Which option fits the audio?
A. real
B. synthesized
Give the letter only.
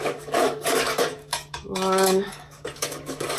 B